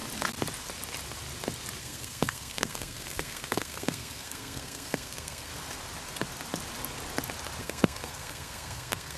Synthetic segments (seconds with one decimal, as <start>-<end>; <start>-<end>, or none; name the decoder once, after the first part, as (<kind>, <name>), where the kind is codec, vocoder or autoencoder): 1.8-5.5 (codec, SNAC); 7.6-9.2